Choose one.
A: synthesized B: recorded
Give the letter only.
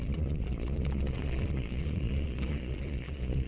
A